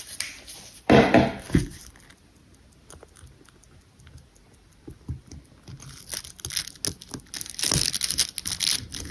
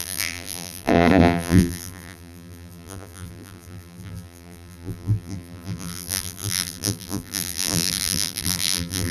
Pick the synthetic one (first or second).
second